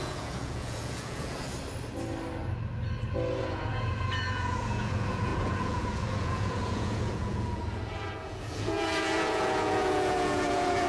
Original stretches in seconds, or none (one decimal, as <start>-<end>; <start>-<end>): 1.5-3.4